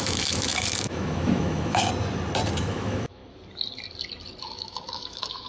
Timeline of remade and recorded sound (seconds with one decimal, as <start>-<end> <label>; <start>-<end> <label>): 0.0-1.8 remade; 1.8-2.6 recorded; 2.6-3.2 remade; 3.2-4.4 recorded; 4.4-5.5 remade